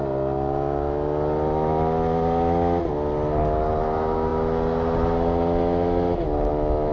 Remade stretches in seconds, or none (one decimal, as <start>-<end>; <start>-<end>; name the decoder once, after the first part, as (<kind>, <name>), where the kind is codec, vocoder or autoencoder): none